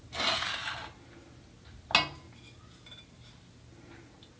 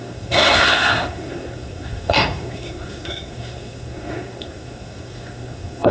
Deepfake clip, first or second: second